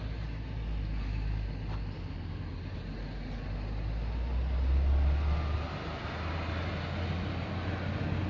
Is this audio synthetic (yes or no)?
no